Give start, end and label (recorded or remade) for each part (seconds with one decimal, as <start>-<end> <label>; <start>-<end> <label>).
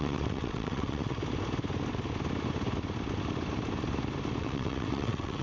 0.0-1.2 remade; 1.2-4.4 recorded; 4.4-5.4 remade